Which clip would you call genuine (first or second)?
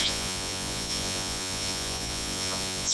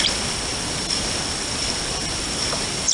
second